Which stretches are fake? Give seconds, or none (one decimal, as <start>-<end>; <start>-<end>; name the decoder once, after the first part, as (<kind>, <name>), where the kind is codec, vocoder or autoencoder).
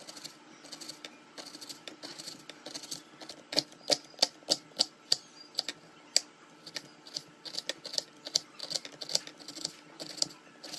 1.1-2.4 (vocoder, BigVGAN v2)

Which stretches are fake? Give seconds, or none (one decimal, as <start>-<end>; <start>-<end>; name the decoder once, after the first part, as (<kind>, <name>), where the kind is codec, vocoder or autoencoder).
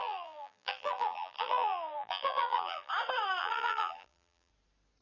0.0-2.9 (vocoder, BigVGAN v2); 3.4-4.5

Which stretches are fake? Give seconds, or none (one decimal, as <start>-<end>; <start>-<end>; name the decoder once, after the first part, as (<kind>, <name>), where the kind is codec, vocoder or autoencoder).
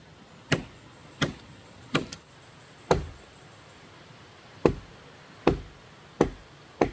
1.0-4.8 (vocoder, BigVGAN v2); 6.1-6.9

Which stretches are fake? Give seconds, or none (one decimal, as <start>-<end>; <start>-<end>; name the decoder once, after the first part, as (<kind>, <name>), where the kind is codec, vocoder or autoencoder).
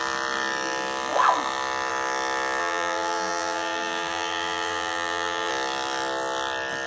2.6-5.5 (vocoder, BigVGAN v2)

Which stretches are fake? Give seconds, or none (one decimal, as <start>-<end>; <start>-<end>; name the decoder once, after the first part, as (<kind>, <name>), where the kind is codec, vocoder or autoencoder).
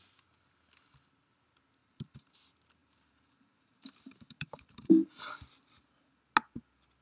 1.8-2.3 (vocoder, BigVGAN v2); 2.8-6.2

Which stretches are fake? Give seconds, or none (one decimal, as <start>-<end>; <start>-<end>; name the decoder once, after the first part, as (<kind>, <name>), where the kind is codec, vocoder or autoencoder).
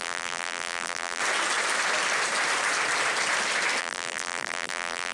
0.0-1.2 (vocoder, BigVGAN v2); 3.8-5.1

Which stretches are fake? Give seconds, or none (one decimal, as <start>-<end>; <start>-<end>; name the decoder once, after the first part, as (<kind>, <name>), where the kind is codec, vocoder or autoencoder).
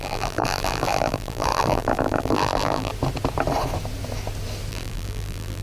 0.0-2.9 (vocoder, BigVGAN v2); 4.7-5.6